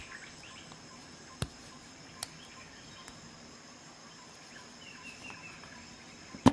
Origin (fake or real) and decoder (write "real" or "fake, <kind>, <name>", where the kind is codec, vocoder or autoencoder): fake, vocoder, BigVGAN v2